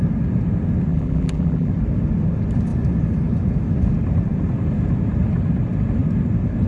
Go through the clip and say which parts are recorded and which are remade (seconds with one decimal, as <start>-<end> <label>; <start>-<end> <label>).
0.0-0.9 recorded; 0.9-1.7 remade; 1.7-6.7 recorded